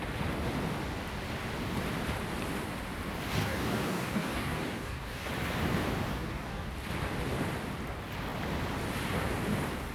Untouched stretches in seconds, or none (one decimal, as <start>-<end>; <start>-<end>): 0.0-3.4; 5.3-6.1; 6.7-9.9